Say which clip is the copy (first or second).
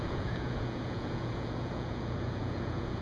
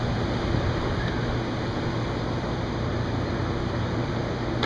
first